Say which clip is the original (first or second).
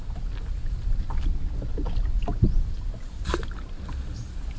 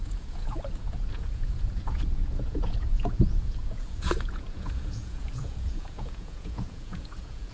first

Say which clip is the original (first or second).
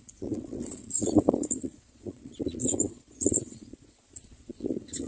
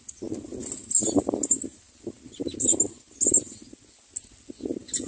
second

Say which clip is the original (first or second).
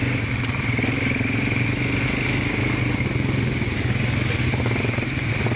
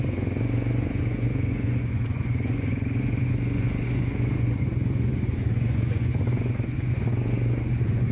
first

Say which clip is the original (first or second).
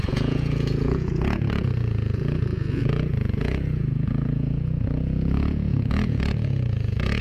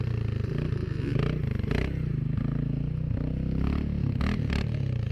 second